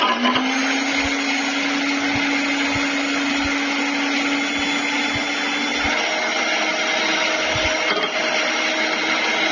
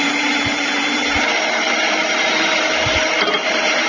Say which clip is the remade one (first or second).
second